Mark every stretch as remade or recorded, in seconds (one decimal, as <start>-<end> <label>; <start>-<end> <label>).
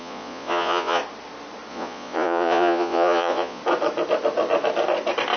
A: 0.0-1.0 remade; 1.0-1.7 recorded; 1.7-3.6 remade; 3.6-5.4 recorded